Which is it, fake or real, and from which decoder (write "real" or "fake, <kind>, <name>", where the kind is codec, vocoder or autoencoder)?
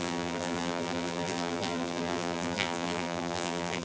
fake, vocoder, BigVGAN v2